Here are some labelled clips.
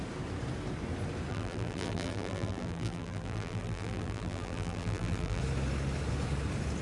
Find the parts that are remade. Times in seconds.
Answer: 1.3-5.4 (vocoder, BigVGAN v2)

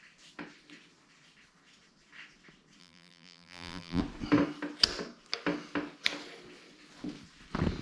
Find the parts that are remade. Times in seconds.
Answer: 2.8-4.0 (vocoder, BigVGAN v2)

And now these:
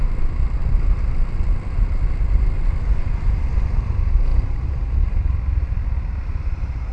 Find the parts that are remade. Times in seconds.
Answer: 0.0-0.6 (vocoder, BigVGAN v2); 1.5-6.9

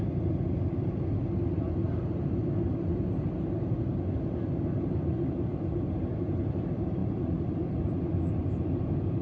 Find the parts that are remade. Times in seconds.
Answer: 2.9-4.0 (vocoder, BigVGAN v2); 7.0-7.9